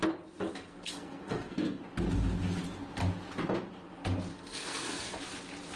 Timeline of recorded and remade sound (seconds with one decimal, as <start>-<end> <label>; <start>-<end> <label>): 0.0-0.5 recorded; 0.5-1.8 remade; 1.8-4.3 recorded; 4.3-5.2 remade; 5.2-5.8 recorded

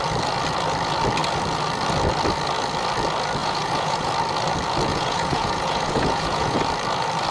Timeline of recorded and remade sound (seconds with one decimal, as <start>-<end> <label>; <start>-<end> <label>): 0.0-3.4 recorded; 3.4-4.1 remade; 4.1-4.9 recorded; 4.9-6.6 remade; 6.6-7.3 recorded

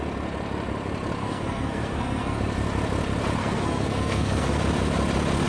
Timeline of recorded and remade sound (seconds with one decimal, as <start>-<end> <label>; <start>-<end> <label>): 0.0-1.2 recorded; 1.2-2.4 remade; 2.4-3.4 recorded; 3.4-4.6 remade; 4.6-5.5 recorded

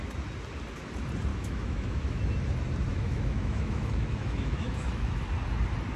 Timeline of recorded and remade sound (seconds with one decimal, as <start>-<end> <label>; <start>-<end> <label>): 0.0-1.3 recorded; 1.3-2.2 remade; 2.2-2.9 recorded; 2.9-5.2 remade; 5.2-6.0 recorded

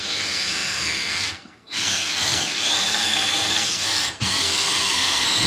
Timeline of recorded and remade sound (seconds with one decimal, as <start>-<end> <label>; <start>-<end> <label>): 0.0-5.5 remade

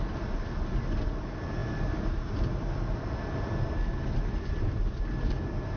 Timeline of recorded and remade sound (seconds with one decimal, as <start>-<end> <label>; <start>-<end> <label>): 0.0-5.8 recorded

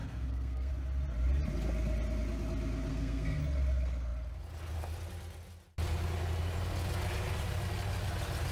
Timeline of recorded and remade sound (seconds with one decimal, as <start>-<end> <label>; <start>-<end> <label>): 0.0-0.7 remade; 0.7-2.9 recorded; 2.9-3.4 remade; 3.4-8.5 recorded

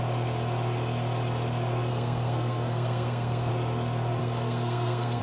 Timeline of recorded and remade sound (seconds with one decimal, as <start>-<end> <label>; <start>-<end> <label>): 0.0-1.9 recorded; 1.9-3.5 remade; 3.5-4.2 recorded; 4.2-5.2 remade